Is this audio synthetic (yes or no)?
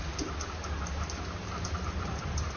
yes